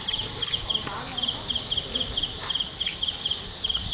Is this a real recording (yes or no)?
yes